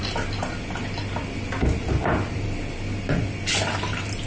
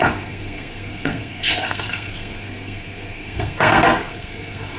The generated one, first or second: second